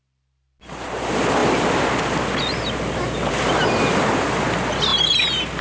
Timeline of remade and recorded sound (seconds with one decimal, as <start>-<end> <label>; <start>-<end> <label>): 0.0-5.6 remade